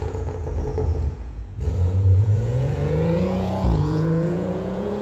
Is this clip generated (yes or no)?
yes